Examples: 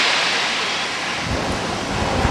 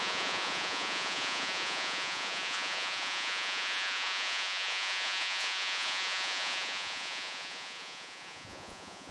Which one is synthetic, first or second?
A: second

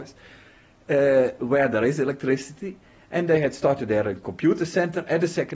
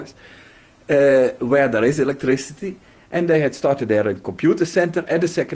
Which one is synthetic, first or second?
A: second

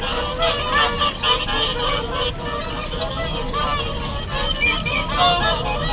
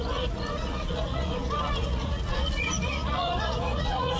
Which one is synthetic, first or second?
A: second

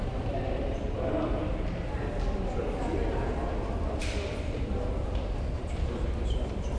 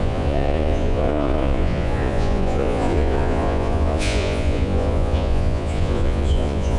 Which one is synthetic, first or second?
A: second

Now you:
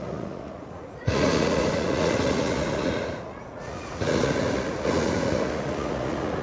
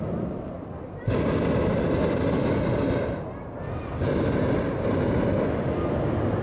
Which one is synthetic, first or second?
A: first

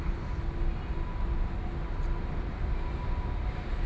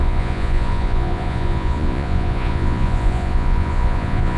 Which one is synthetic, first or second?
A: second